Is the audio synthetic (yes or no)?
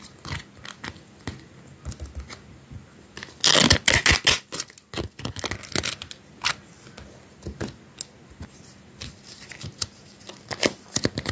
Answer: no